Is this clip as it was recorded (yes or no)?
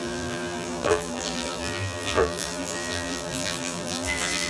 no